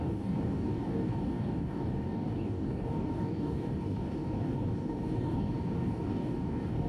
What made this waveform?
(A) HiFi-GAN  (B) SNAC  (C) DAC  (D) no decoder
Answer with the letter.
C